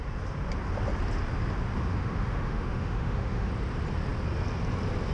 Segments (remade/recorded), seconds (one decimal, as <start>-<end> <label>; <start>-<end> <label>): 0.0-1.9 recorded; 1.9-3.5 remade; 3.5-5.1 recorded